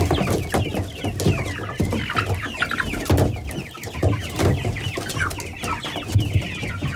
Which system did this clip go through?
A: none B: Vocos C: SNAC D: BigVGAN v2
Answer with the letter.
A